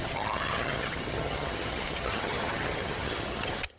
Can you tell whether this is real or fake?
fake